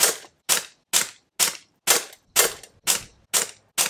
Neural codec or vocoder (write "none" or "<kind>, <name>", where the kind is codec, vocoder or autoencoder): none